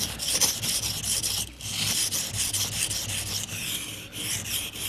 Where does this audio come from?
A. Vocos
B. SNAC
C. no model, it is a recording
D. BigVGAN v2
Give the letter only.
C